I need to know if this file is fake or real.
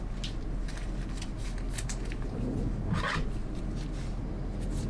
real